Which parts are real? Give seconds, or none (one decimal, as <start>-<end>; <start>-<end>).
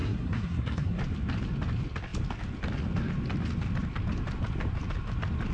1.0-5.5